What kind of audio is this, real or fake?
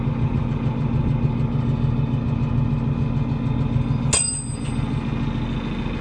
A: real